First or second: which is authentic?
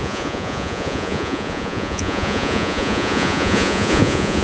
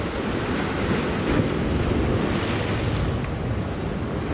second